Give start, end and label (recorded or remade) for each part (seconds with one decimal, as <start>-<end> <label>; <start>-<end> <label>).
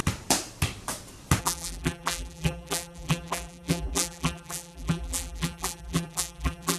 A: 0.0-1.4 recorded; 1.4-6.8 remade